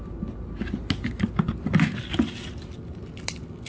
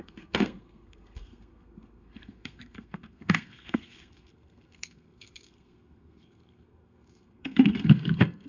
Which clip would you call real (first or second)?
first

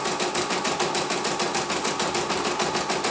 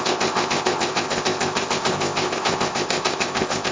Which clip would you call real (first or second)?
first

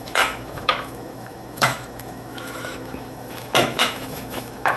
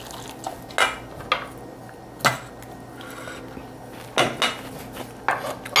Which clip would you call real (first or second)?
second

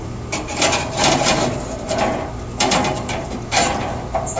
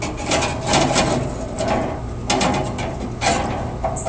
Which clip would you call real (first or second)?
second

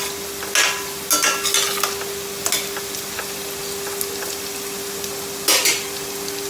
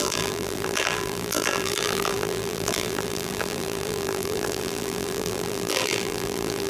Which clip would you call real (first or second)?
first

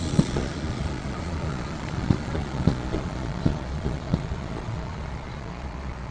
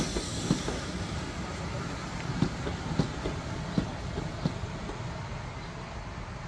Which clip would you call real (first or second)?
second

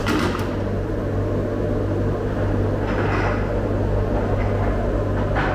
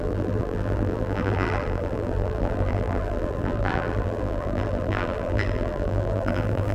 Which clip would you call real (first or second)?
first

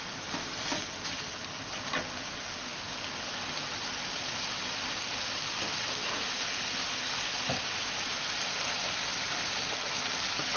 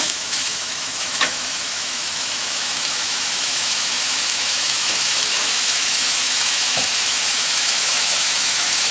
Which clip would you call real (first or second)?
first